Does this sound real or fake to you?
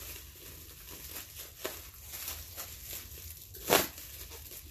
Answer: real